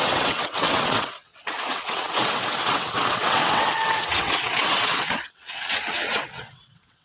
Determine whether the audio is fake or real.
fake